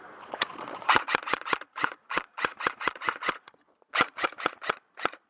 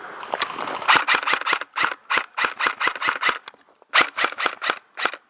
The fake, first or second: first